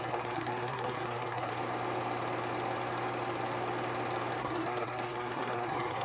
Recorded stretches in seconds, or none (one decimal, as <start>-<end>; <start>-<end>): 1.5-4.4